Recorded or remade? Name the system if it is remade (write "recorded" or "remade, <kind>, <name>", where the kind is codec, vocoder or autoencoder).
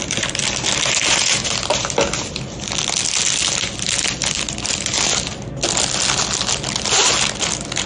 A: recorded